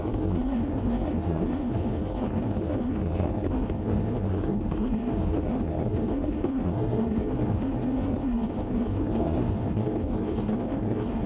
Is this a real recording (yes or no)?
no